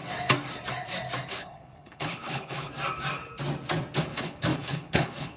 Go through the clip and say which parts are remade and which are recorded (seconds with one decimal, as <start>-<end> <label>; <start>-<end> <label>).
0.0-1.3 recorded; 1.3-2.7 remade; 2.7-4.0 recorded; 4.0-5.4 remade